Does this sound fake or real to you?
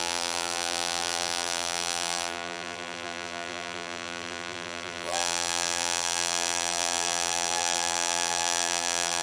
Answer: fake